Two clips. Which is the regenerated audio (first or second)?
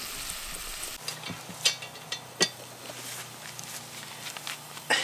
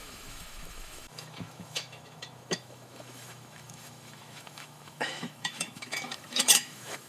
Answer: second